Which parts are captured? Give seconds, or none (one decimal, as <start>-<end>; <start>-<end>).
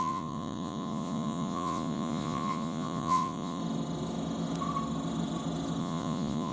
3.6-5.8